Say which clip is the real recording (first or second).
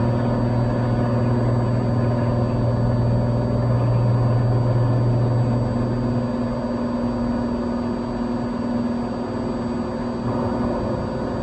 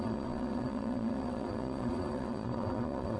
first